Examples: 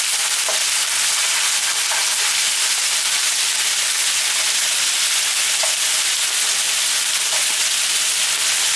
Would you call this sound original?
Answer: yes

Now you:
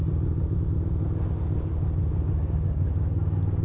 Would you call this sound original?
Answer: yes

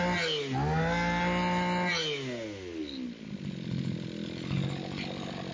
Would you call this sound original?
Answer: yes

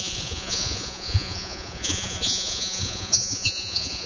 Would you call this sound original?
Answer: no